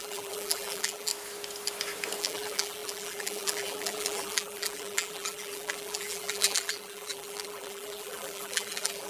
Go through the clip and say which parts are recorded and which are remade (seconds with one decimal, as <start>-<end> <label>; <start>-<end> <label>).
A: 0.0-1.1 remade; 1.1-2.2 recorded; 2.2-9.1 remade